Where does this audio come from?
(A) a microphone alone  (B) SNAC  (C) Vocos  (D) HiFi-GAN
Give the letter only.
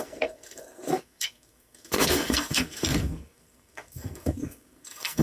B